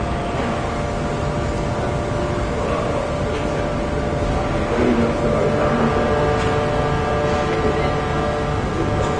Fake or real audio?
real